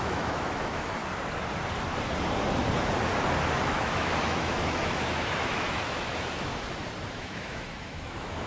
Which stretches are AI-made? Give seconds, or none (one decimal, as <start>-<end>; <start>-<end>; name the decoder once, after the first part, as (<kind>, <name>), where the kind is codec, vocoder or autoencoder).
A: 0.0-1.0 (autoencoder, DAC-VAE); 3.6-6.5; 7.1-8.5